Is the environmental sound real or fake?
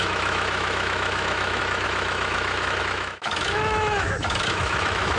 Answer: fake